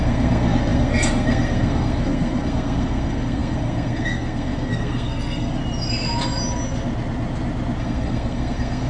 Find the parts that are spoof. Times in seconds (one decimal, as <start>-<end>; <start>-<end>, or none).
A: 0.0-5.6; 7.8-8.9